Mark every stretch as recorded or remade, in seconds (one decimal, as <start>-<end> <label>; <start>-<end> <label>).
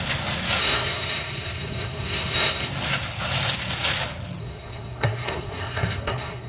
0.0-0.6 recorded; 0.6-2.7 remade; 2.7-4.4 recorded; 4.4-6.5 remade